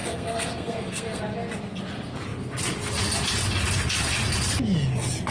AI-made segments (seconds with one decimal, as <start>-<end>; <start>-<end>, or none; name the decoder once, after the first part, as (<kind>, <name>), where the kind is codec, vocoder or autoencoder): 0.0-1.2 (codec, SNAC)